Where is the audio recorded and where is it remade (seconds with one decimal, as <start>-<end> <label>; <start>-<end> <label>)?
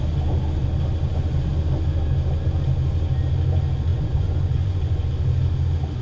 0.0-3.9 recorded; 3.9-5.0 remade; 5.0-6.0 recorded